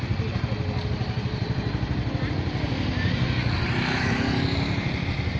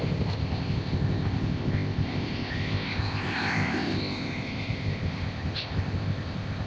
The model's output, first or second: second